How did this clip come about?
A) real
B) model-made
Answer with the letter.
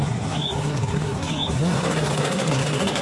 B